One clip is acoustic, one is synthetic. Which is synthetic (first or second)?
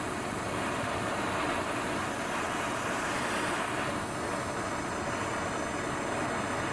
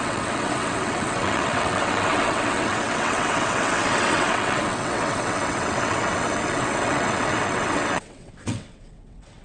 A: second